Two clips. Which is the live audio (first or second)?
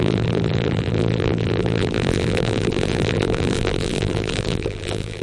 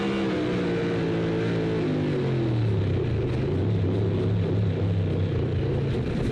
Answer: second